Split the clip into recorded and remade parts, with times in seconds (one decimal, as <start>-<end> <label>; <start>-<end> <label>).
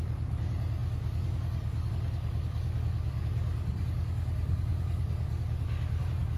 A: 0.0-6.4 remade